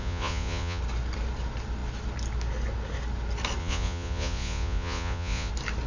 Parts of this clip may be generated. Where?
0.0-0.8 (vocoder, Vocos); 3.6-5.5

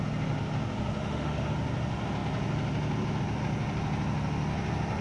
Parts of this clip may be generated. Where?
1.0-1.5 (autoencoder, DAC-VAE)

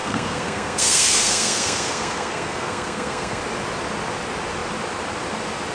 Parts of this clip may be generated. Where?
0.0-3.4 (codec, SNAC)

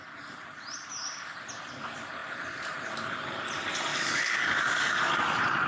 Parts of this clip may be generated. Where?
3.9-5.0 (codec, DAC)

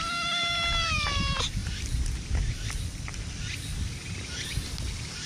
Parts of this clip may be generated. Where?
0.0-1.6 (vocoder, BigVGAN v2); 3.2-3.7

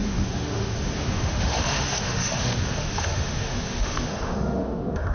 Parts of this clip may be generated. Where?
0.0-5.1 (autoencoder, DAC-VAE)

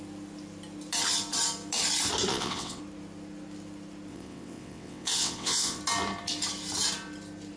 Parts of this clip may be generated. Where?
2.3-2.8 (vocoder, WaveNeXt); 4.1-5.8

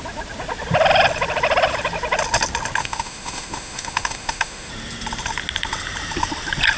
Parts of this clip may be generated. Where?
2.8-4.7 (autoencoder, DAC-VAE)